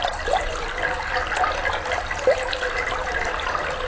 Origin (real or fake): real